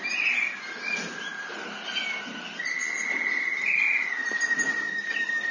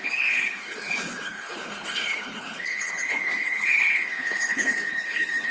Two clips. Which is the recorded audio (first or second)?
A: first